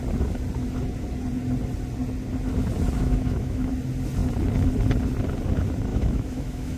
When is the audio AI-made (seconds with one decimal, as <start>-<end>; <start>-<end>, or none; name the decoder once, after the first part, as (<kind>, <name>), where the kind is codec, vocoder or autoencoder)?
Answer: 3.0-3.7 (autoencoder, DAC-VAE); 5.9-6.8